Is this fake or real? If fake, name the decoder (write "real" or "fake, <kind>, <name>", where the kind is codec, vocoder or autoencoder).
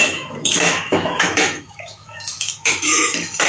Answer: fake, autoencoder, DAC-VAE